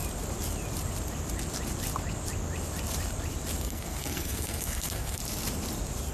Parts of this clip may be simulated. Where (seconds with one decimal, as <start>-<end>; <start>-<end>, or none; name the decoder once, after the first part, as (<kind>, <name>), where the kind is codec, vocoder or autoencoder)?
3.6-5.2 (codec, SNAC)